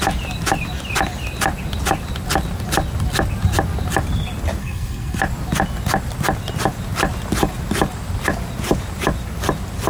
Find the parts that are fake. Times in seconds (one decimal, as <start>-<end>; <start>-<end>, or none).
4.6-5.2